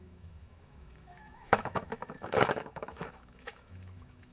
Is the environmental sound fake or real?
fake